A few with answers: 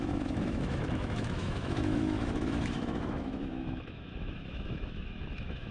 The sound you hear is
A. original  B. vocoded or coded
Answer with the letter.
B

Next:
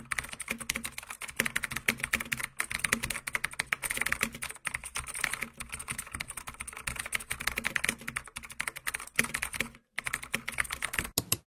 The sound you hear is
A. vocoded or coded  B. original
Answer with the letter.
B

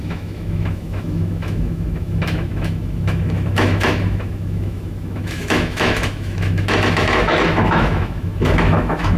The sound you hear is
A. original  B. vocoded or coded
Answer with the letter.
B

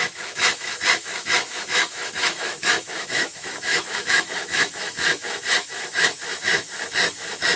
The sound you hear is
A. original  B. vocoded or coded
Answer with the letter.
B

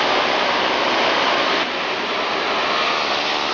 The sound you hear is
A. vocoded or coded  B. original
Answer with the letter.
B